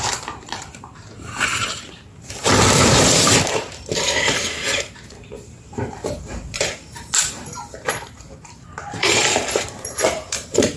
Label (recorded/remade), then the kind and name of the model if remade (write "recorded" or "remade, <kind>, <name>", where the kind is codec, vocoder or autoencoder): remade, vocoder, BigVGAN v2